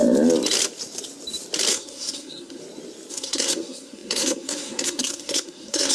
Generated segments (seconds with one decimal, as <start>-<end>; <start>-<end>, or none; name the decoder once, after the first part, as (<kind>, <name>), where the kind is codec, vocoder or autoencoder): 1.7-2.6 (codec, SNAC); 3.1-5.9